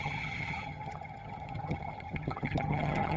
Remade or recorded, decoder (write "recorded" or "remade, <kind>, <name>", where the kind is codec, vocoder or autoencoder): remade, vocoder, HiFi-GAN